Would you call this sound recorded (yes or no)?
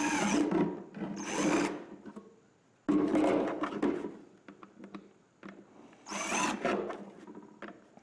yes